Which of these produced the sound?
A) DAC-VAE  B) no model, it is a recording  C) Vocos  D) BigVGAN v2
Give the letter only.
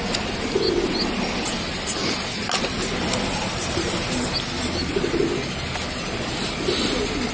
B